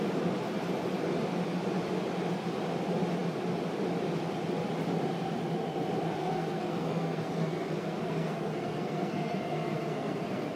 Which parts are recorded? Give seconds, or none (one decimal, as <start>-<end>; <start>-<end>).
0.0-6.2